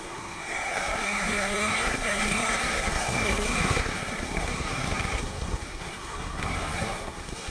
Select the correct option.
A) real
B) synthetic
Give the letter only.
B